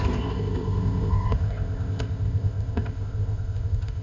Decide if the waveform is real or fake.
fake